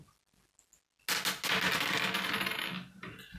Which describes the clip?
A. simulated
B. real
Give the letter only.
B